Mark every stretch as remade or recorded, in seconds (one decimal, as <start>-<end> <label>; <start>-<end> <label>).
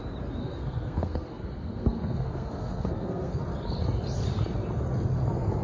0.0-0.4 recorded; 0.4-3.4 remade; 3.4-5.6 recorded